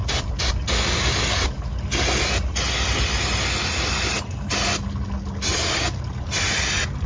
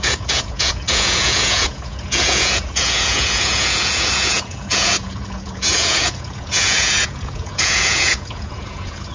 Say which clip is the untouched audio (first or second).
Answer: first